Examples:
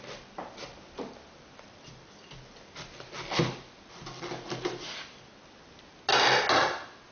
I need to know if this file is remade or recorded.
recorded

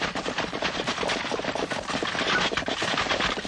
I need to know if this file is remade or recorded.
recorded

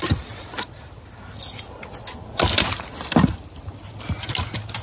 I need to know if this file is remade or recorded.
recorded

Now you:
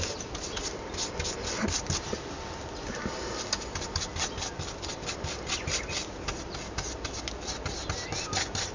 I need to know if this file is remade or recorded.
recorded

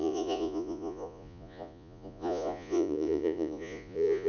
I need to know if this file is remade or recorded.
remade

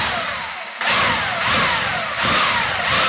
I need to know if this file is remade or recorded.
recorded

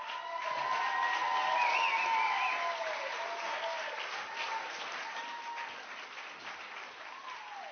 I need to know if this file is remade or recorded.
recorded